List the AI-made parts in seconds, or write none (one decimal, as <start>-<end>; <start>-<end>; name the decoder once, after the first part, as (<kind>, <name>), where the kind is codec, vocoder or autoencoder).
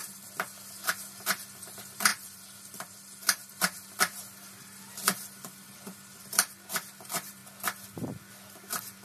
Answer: 0.0-7.4 (vocoder, BigVGAN v2); 8.3-9.0